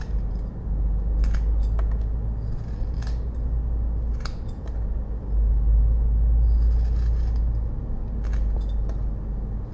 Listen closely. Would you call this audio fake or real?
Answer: real